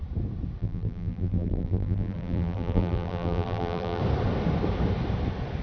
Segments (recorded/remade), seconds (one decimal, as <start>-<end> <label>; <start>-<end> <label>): 0.0-0.6 recorded; 0.6-4.0 remade; 4.0-5.6 recorded